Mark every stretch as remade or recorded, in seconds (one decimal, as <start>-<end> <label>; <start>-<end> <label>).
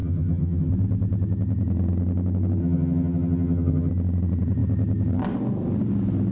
0.0-0.7 remade; 0.7-2.6 recorded; 2.6-3.9 remade; 3.9-6.3 recorded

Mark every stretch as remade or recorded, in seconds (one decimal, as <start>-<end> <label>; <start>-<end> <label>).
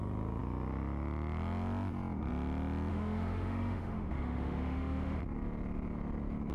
0.0-2.9 recorded; 2.9-5.2 remade; 5.2-6.5 recorded